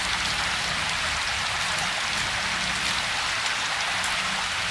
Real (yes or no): yes